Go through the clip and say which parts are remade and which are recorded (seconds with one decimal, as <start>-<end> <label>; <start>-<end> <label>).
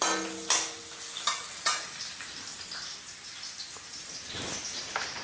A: 0.0-5.2 recorded